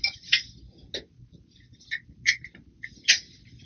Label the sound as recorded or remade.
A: recorded